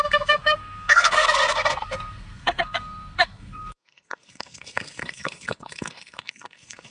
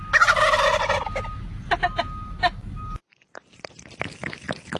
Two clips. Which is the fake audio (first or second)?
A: first